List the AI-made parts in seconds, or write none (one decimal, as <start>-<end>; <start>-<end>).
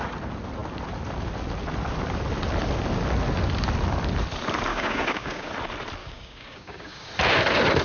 4.7-5.5; 6.0-7.1